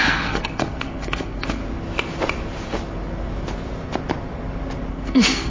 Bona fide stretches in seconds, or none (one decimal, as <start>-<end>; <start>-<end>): 1.6-4.9

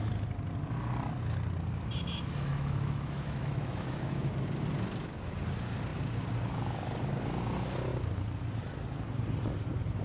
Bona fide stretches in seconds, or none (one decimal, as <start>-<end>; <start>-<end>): 0.0-2.5; 4.3-10.0

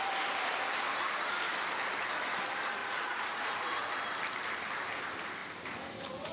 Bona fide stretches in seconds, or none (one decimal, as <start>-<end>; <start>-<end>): 0.0-2.8; 3.9-6.3

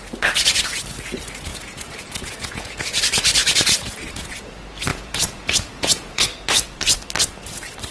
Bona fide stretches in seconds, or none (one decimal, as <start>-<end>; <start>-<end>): 0.0-1.5; 3.0-3.4; 4.5-4.9; 6.2-7.9